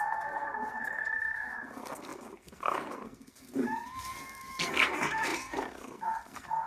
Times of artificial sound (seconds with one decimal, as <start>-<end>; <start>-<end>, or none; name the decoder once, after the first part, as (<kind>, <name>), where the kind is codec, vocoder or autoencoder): 0.0-6.7 (codec, SNAC)